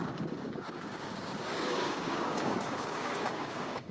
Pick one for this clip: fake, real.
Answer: fake